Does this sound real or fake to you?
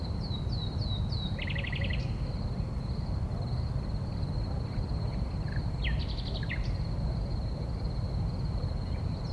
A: real